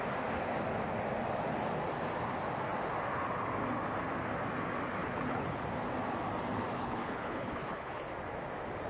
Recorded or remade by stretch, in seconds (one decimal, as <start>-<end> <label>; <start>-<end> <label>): 0.0-5.0 recorded; 5.0-5.6 remade; 5.6-6.7 recorded; 6.7-8.1 remade; 8.1-8.9 recorded